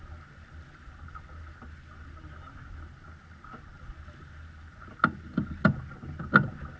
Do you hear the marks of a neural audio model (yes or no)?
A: no